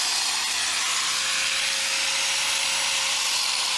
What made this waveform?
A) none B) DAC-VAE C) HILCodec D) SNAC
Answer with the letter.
A